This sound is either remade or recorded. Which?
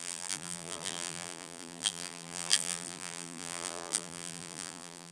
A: remade